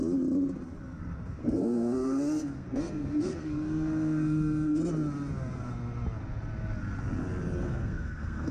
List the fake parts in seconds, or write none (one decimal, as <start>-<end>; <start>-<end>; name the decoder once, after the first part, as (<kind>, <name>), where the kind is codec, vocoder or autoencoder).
1.4-4.8 (codec, SNAC); 7.6-8.5